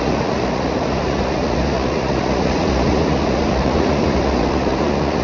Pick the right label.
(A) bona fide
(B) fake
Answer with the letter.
B